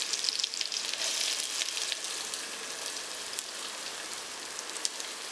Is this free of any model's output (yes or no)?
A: yes